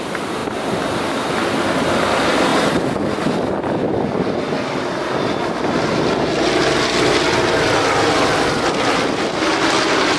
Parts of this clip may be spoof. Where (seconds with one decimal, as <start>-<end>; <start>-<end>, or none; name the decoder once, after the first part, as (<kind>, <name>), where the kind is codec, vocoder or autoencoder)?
none